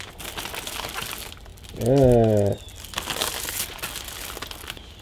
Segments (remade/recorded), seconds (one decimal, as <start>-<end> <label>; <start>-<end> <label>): 0.0-5.0 recorded

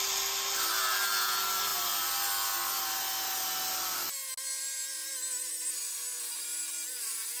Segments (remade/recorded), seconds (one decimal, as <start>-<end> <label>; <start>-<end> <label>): 0.0-7.4 recorded

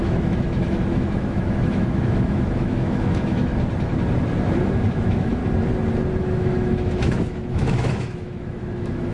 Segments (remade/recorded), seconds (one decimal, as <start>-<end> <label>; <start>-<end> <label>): 0.0-3.5 remade; 3.5-4.9 recorded; 4.9-5.4 remade; 5.4-6.2 recorded; 6.2-9.1 remade

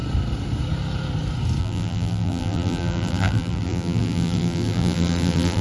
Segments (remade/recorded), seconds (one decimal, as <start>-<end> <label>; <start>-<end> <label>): 0.0-1.6 recorded; 1.6-5.6 remade

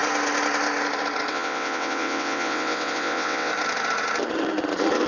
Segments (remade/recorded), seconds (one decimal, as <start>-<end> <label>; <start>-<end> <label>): 0.0-1.3 recorded; 1.3-3.5 remade; 3.5-5.1 recorded

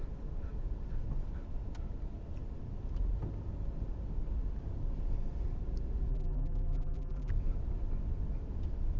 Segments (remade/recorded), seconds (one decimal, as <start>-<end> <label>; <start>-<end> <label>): 0.0-6.1 recorded; 6.1-7.3 remade; 7.3-9.0 recorded

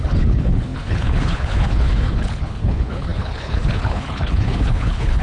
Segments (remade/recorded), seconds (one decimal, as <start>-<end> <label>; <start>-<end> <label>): 0.0-5.2 remade